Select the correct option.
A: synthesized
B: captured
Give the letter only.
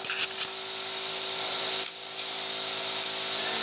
B